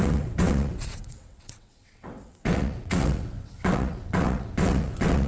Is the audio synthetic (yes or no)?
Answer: yes